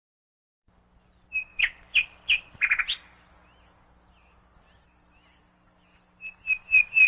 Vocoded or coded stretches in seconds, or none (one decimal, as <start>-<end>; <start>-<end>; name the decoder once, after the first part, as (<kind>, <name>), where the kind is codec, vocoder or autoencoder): 1.5-2.8 (vocoder, BigVGAN v2)